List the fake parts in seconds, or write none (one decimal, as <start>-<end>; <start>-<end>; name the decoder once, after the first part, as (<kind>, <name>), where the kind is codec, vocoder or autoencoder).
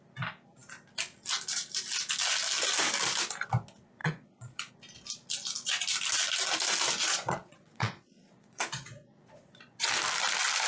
4.0-4.7 (vocoder, Vocos); 7.0-9.8